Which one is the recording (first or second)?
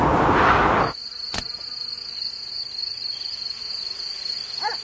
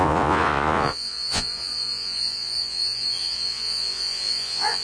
first